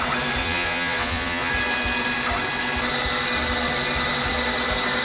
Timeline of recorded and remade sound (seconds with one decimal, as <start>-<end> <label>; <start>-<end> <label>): 0.0-0.4 recorded; 0.4-1.5 remade; 1.5-5.0 recorded